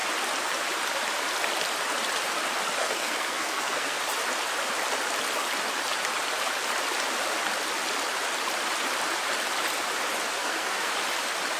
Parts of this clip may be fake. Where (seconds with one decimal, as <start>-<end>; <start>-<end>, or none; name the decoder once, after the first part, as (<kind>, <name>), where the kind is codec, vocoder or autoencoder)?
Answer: 2.8-4.0 (codec, SNAC); 10.4-10.9